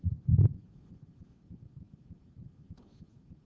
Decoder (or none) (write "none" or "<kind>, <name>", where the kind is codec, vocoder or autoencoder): none